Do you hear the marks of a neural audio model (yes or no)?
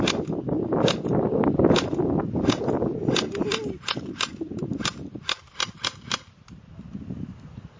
no